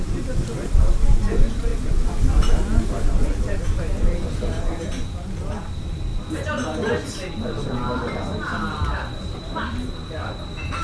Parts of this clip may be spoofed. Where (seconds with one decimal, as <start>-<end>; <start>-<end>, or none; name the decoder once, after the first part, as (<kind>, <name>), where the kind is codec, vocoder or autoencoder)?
0.0-1.7 (vocoder, BigVGAN v2); 4.6-6.1; 7.3-10.8

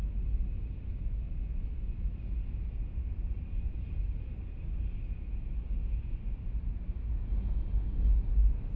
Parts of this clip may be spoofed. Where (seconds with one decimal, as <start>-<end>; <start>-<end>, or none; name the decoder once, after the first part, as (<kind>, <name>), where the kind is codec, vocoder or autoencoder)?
3.2-4.7 (vocoder, BigVGAN v2)